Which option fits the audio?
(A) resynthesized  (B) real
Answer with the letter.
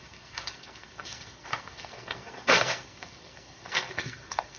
A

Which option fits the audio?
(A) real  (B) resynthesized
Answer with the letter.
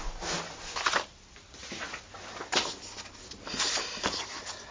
A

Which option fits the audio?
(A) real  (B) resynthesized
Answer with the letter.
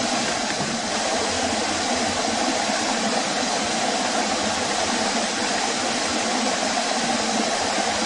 A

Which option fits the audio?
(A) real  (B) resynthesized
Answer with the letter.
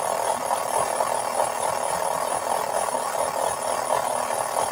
A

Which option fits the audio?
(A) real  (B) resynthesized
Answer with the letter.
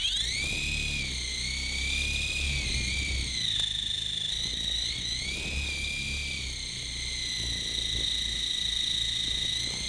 A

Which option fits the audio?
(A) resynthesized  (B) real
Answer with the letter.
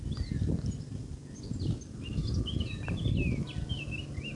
B